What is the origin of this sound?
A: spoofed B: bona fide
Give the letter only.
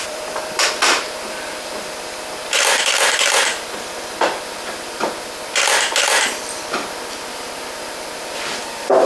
A